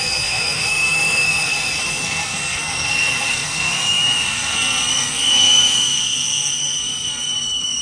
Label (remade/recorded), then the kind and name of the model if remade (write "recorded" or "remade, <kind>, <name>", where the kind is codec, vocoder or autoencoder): remade, codec, SNAC